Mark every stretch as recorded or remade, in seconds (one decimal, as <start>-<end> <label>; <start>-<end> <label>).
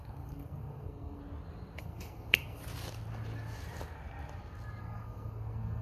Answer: 0.0-1.2 remade; 1.2-1.8 recorded; 1.8-2.6 remade; 2.6-4.8 recorded; 4.8-5.8 remade